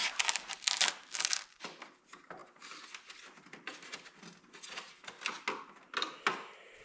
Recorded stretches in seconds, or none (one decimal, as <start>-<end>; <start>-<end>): 0.0-6.8